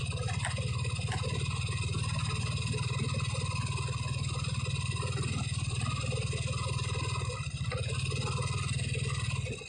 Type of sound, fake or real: real